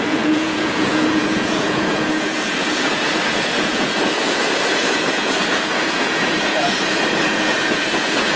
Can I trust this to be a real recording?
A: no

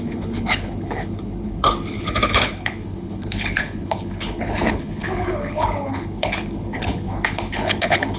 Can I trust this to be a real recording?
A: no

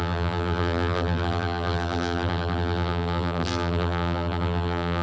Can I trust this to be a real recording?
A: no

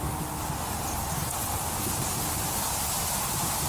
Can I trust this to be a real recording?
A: yes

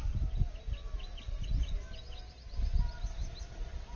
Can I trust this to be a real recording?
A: yes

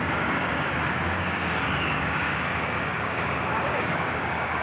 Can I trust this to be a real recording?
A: no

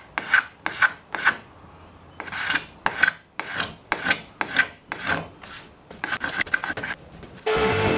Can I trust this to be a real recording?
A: yes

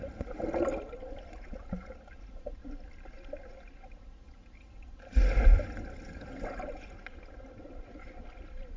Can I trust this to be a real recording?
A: yes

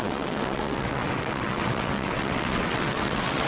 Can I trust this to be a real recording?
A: no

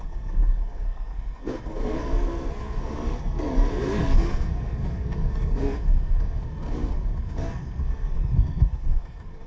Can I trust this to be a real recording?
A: no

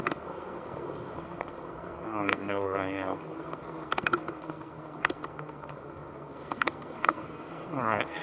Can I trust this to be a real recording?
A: no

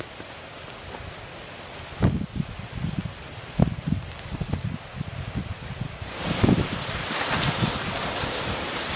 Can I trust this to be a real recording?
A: yes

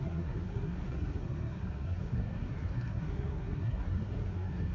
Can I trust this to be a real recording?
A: no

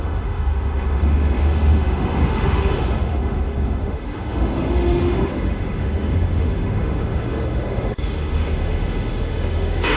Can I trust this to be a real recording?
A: no